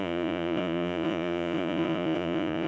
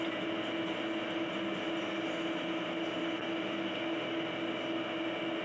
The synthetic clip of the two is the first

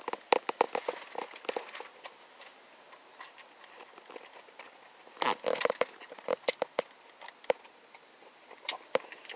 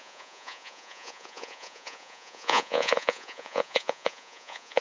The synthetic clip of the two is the second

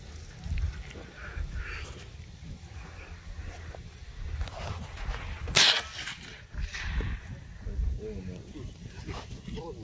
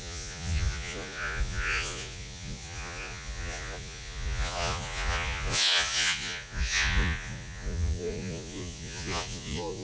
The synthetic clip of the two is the second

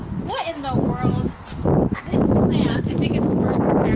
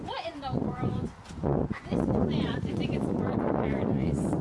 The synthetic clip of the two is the second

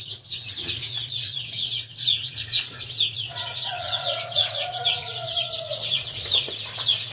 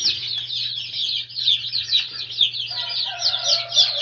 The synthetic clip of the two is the first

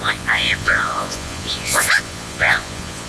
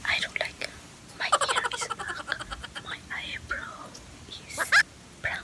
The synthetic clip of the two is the first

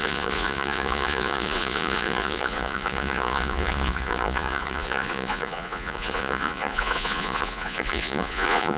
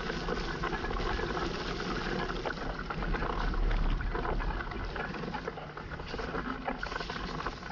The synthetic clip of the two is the first